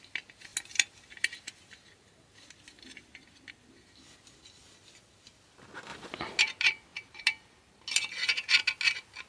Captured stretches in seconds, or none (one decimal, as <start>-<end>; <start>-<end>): 0.0-9.3

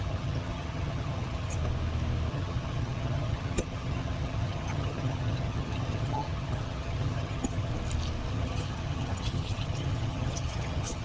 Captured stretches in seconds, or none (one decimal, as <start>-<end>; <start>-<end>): 1.6-2.3; 7.7-8.3